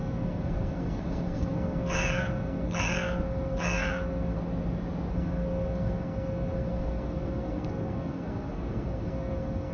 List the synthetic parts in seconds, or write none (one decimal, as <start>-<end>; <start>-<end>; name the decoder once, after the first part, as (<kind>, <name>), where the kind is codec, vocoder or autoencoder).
0.0-4.4 (codec, SNAC); 5.1-9.7